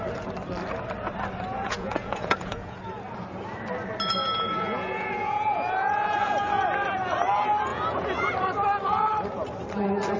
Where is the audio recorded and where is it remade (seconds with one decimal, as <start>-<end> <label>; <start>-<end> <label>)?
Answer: 0.0-1.5 recorded; 1.5-2.8 remade; 2.8-4.2 recorded; 4.2-6.5 remade; 6.5-7.7 recorded; 7.7-8.3 remade; 8.3-10.2 recorded